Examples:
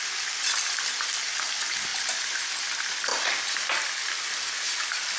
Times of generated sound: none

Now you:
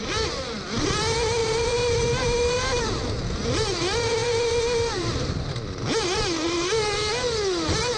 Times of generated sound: 1.4-2.8 (vocoder, BigVGAN v2); 4.2-5.8